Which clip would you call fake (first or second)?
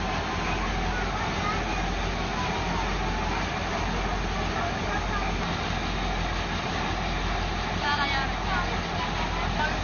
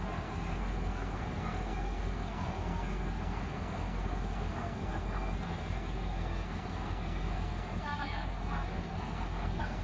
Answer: second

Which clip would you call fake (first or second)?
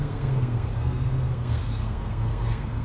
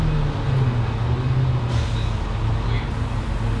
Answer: first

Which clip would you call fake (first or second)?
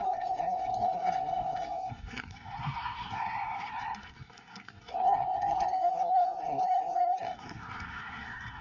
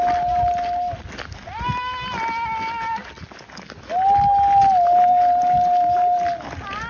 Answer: first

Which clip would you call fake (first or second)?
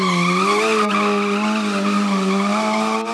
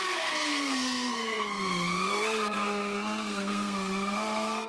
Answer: second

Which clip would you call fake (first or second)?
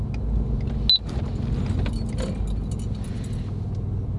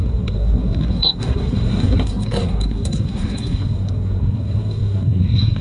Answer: second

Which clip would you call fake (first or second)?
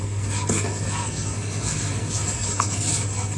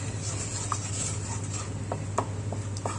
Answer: first